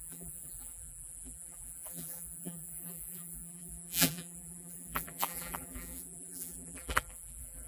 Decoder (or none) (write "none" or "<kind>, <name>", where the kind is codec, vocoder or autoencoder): vocoder, BigVGAN v2